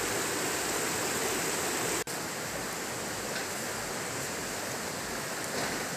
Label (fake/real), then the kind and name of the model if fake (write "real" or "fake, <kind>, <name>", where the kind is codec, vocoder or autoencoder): real